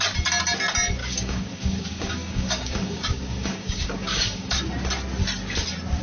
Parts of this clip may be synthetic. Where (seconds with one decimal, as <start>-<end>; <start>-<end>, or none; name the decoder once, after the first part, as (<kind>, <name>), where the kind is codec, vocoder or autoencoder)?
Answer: 1.0-4.6 (codec, DAC)